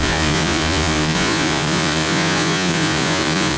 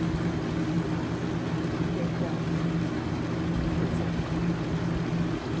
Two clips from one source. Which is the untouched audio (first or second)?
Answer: second